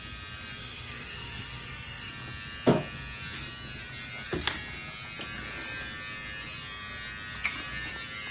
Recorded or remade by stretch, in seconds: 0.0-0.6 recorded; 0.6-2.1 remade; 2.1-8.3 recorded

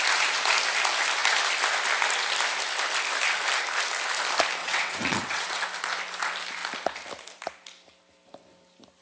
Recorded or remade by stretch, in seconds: 0.0-4.6 recorded; 4.6-5.6 remade; 5.6-9.0 recorded

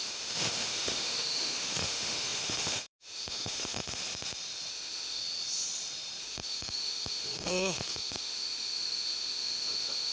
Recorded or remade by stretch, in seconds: 0.0-4.0 remade; 4.0-4.7 recorded; 4.7-5.2 remade; 5.2-6.2 recorded; 6.2-10.1 remade

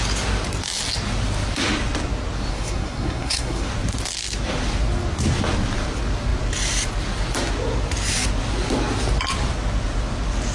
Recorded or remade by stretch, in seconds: 0.0-2.5 recorded; 2.5-3.7 remade; 3.7-10.5 recorded

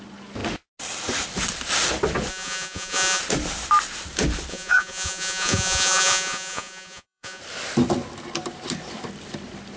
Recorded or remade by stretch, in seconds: 0.0-2.3 recorded; 2.3-3.2 remade; 3.2-4.5 recorded; 4.5-7.4 remade; 7.4-9.8 recorded

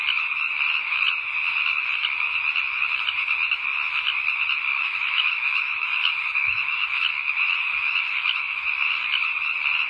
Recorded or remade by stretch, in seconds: 0.0-4.7 recorded; 4.7-7.0 remade; 7.0-7.8 recorded; 7.8-8.7 remade; 8.7-9.9 recorded

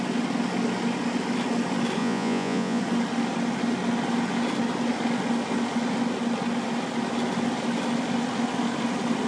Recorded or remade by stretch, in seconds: 0.0-2.0 recorded; 2.0-2.8 remade; 2.8-9.3 recorded

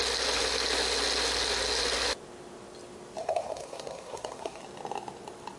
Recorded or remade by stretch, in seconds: 0.0-3.2 recorded; 3.2-4.6 remade; 4.6-5.6 recorded